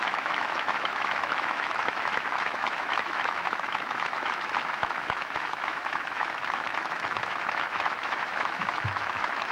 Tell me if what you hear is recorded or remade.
remade